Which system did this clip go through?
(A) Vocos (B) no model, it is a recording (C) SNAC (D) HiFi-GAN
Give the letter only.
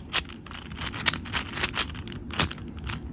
B